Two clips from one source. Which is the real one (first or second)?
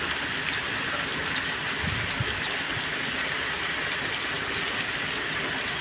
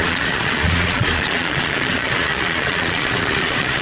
first